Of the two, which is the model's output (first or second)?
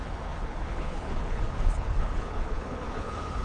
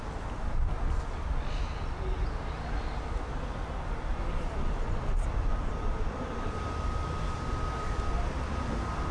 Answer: first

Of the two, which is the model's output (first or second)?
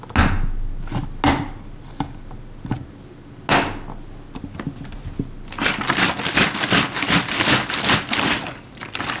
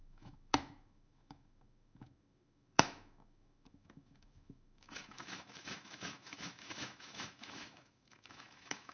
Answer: second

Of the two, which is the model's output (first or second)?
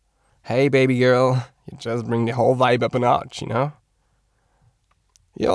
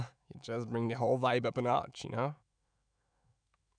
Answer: second